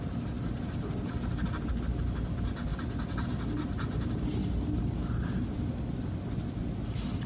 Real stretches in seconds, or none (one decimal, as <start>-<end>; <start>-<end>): 0.0-7.3

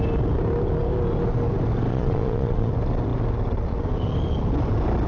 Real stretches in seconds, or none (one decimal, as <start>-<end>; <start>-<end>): 0.0-1.9; 2.7-5.1

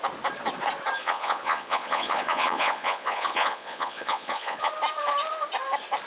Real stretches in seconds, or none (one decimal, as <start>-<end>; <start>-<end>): 0.0-1.0; 4.7-6.1

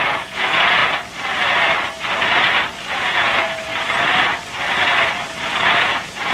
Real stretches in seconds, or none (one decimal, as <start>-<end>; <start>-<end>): 0.8-2.9; 3.7-5.8

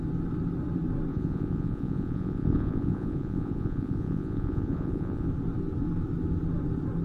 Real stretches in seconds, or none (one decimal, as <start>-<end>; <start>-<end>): 0.0-1.1; 5.3-7.0

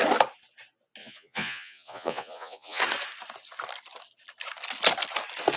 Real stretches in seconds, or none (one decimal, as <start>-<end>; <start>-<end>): 0.0-1.0; 2.8-5.6